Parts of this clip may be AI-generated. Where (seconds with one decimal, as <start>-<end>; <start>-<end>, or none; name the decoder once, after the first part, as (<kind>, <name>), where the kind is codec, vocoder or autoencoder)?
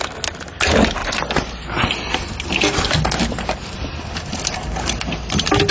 none